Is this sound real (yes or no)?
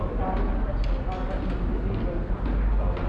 yes